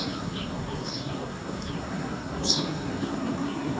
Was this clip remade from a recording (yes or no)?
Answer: yes